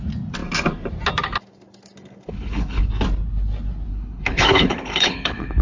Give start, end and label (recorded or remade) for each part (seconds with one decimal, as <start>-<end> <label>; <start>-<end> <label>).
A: 0.0-2.3 recorded; 2.3-2.9 remade; 2.9-3.9 recorded; 3.9-5.6 remade